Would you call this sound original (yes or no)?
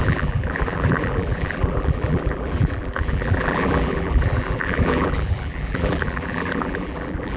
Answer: no